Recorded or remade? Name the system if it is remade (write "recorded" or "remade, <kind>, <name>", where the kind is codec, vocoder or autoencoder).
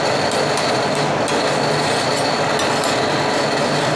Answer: recorded